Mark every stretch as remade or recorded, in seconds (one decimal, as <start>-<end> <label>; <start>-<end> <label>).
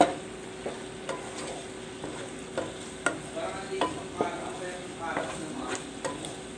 0.0-6.6 recorded